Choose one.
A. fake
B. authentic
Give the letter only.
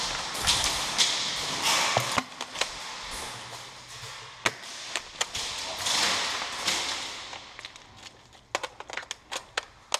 B